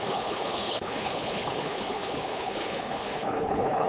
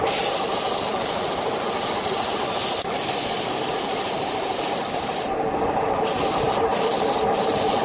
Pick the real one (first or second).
second